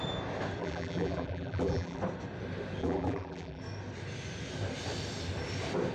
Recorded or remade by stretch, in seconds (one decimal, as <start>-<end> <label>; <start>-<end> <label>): 0.0-0.6 recorded; 0.6-2.0 remade; 2.0-2.8 recorded; 2.8-3.6 remade; 3.6-5.9 recorded